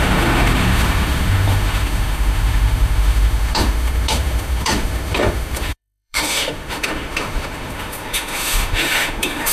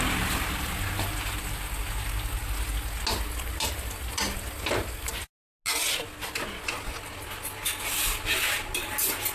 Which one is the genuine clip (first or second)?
second